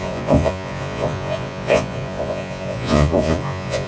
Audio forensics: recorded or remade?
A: remade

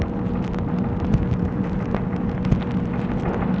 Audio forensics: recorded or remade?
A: recorded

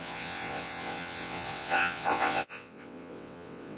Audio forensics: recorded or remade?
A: remade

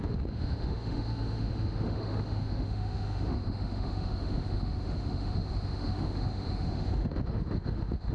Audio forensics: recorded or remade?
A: remade